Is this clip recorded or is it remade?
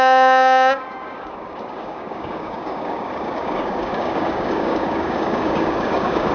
remade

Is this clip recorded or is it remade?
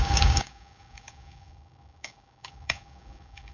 remade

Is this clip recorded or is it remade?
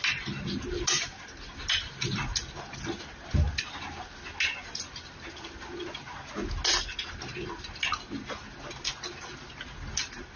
recorded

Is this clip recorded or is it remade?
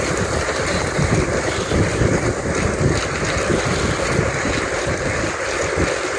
recorded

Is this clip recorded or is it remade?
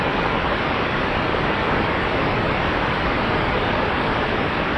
remade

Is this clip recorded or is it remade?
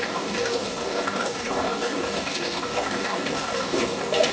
remade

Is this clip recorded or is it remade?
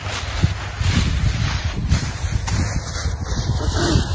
recorded